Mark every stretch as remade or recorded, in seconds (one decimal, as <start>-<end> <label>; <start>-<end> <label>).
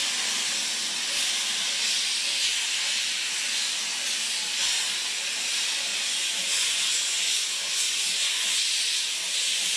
0.0-5.9 recorded; 5.9-8.6 remade; 8.6-9.8 recorded